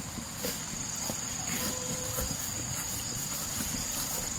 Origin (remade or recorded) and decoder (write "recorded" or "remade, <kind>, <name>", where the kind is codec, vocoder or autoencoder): recorded